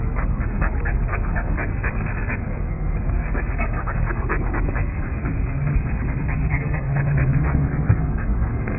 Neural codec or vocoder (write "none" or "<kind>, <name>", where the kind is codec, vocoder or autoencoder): codec, SNAC